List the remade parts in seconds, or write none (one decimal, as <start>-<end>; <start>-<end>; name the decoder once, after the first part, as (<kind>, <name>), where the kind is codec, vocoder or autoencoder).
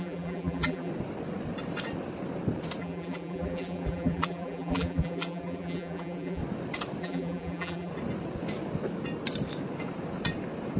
0.0-0.9 (vocoder, BigVGAN v2); 2.8-6.4; 7.0-7.9